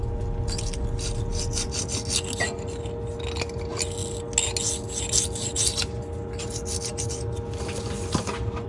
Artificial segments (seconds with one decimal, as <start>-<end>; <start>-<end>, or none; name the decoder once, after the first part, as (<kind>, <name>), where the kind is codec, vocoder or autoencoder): none